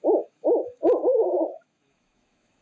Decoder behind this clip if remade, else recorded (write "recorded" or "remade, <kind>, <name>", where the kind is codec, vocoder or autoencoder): remade, autoencoder, DAC-VAE